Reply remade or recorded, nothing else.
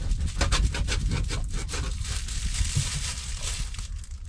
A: recorded